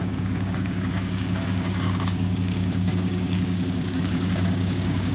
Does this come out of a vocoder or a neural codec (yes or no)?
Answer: yes